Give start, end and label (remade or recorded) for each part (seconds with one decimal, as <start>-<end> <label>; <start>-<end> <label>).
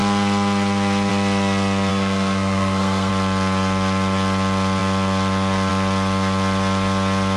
0.0-1.9 recorded; 1.9-3.1 remade; 3.1-7.4 recorded